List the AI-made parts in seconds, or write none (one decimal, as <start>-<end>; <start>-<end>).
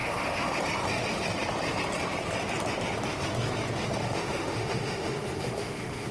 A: 0.0-0.6; 4.0-6.1